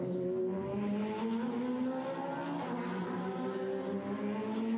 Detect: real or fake real